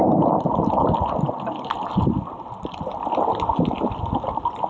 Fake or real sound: real